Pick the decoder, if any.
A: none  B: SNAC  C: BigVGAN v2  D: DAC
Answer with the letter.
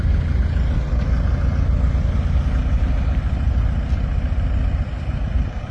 A